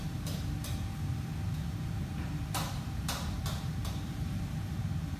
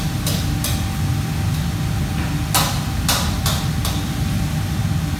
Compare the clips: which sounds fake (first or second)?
first